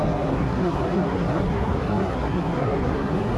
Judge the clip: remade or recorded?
remade